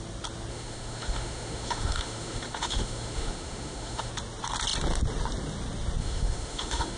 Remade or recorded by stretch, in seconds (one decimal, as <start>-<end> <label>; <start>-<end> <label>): 0.0-0.5 recorded; 0.5-4.1 remade; 4.1-6.0 recorded; 6.0-7.0 remade